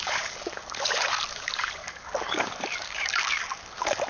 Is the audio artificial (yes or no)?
yes